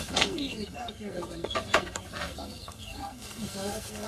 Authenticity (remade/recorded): remade